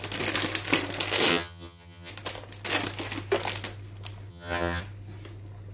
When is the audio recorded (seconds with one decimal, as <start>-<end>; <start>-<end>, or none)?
0.0-1.3; 2.1-4.3; 4.8-5.7